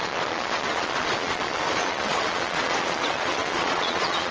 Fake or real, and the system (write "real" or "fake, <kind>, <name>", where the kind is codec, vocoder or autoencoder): fake, vocoder, Vocos